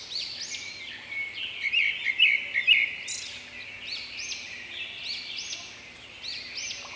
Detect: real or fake real